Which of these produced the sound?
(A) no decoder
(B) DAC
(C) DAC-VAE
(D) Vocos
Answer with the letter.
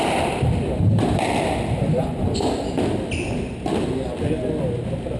A